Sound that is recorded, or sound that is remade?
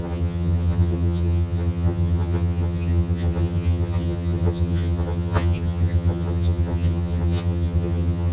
remade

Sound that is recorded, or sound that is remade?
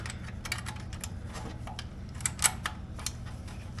recorded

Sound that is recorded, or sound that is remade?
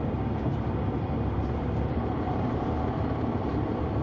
remade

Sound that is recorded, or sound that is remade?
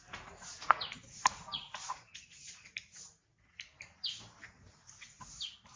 recorded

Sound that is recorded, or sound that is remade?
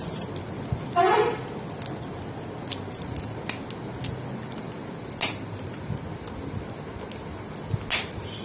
recorded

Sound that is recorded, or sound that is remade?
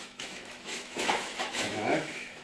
remade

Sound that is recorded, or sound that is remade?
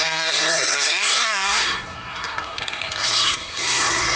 remade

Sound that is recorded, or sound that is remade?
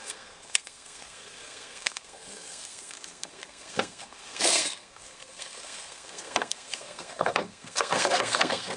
remade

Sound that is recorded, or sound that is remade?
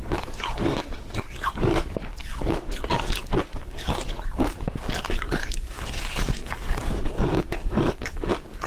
remade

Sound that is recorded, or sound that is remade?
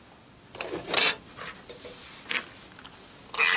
recorded